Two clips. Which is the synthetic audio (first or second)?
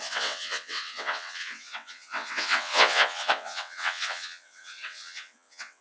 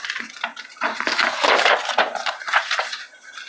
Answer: first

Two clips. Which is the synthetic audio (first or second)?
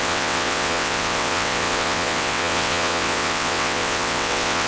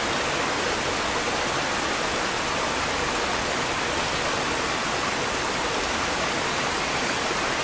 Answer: first